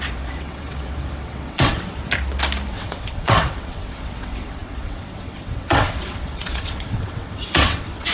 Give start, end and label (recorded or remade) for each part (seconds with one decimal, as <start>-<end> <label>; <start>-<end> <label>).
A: 0.0-2.0 remade; 2.0-2.7 recorded; 2.7-8.1 remade